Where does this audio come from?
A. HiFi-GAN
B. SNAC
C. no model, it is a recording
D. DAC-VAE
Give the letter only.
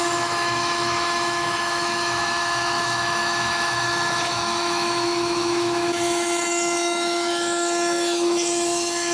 D